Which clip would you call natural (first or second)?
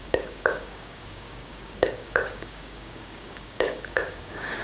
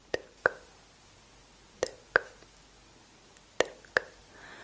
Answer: second